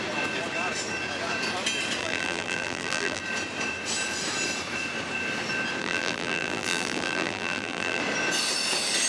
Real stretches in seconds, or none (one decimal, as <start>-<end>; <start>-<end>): 0.0-2.0; 3.2-5.8; 8.0-9.1